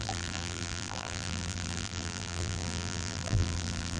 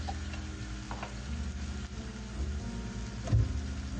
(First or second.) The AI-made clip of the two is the first